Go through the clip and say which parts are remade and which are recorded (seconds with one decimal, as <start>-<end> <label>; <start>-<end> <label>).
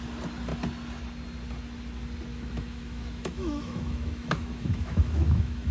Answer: 0.0-2.3 recorded; 2.3-5.7 remade